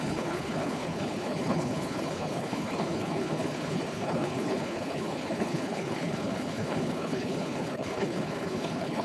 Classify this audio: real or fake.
fake